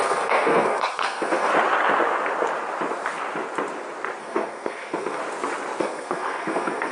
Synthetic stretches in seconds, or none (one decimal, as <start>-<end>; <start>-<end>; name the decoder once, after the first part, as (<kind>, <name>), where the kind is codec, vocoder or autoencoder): 0.0-1.5 (codec, SNAC); 4.2-5.2; 5.8-6.9